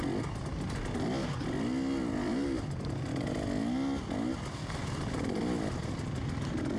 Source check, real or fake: real